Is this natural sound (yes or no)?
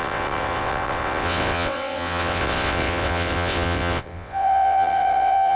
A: no